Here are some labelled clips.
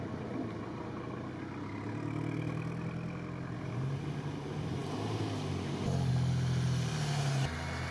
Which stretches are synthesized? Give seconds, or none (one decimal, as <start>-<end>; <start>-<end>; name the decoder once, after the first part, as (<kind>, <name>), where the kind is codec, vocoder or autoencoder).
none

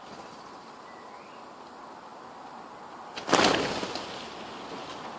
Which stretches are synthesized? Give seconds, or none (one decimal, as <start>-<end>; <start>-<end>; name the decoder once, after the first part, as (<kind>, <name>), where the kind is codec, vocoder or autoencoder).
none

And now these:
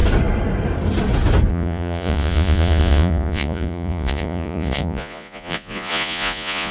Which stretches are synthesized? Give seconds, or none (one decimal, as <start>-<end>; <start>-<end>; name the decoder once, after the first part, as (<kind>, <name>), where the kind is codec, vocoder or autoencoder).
1.5-6.7 (vocoder, Vocos)

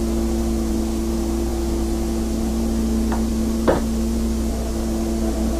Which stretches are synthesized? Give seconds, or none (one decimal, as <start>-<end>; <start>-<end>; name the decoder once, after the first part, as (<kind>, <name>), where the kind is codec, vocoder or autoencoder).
none

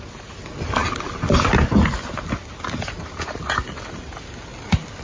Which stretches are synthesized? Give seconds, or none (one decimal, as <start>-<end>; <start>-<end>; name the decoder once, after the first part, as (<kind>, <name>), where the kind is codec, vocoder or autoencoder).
none

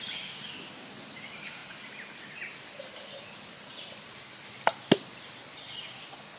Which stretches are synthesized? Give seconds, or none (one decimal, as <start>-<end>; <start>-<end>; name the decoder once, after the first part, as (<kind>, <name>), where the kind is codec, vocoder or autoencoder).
none

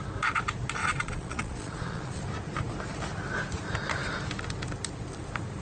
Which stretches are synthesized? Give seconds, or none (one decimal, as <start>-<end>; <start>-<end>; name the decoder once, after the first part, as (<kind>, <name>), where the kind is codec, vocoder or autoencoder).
0.8-2.2 (vocoder, Vocos)